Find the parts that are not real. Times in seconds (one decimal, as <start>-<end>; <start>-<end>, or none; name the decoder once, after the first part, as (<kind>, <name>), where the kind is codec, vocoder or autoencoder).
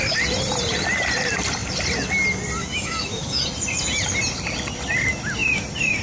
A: 2.6-3.4 (autoencoder, DAC-VAE)